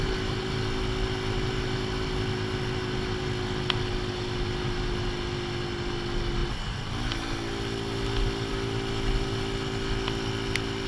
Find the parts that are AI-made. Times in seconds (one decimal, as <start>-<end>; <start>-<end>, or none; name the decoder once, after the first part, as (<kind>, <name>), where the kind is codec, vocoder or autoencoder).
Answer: none